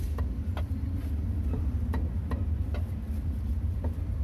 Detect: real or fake real